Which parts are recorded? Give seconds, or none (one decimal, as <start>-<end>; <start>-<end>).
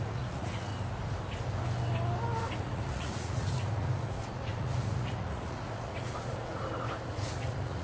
0.7-2.6; 6.5-7.1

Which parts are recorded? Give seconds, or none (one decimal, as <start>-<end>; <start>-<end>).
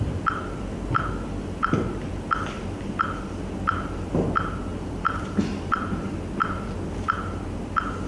0.0-4.7; 5.5-8.1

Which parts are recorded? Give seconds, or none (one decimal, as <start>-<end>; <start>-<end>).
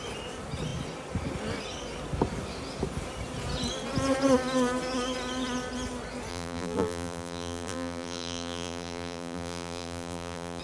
0.0-6.3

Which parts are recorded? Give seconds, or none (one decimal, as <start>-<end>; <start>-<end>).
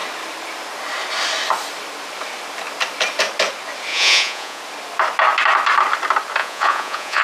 0.0-3.9; 4.6-6.4